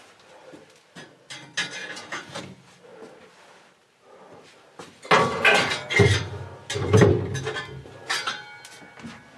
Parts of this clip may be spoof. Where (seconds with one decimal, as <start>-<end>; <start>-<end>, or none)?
1.8-2.4